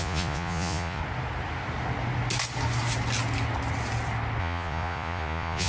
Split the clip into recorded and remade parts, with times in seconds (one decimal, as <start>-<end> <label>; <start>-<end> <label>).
0.0-1.0 remade; 1.0-4.4 recorded; 4.4-5.7 remade